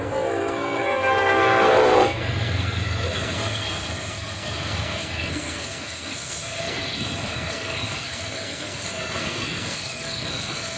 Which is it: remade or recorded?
remade